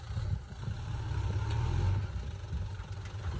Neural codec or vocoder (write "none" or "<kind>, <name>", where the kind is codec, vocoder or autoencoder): none